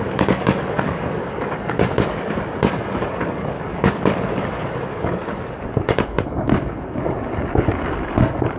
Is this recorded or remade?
remade